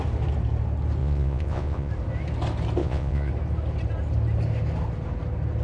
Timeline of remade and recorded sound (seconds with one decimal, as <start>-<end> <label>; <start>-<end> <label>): 0.0-1.0 recorded; 1.0-1.9 remade; 1.9-2.8 recorded; 2.8-3.3 remade; 3.3-5.6 recorded

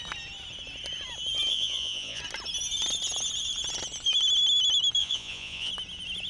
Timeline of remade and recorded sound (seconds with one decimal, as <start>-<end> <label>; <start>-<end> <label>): 0.0-1.5 recorded; 1.5-2.2 remade; 2.2-5.0 recorded; 5.0-5.7 remade; 5.7-6.3 recorded

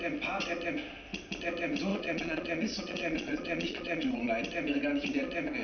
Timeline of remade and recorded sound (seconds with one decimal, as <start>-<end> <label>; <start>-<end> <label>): 0.0-1.9 recorded; 1.9-4.3 remade; 4.3-5.6 recorded

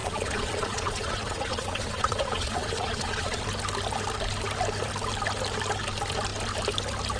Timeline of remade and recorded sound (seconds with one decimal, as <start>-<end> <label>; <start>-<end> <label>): 0.0-3.4 remade; 3.4-7.2 recorded

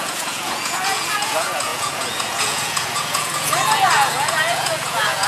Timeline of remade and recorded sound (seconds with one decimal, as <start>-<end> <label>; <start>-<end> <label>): 0.0-5.3 remade